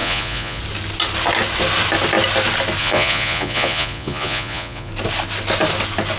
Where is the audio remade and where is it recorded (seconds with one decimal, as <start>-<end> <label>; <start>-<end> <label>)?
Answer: 0.0-0.6 remade; 0.6-2.8 recorded; 2.8-4.9 remade; 4.9-6.2 recorded